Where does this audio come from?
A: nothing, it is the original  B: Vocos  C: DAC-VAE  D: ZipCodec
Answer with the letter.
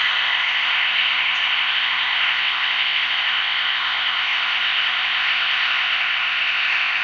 D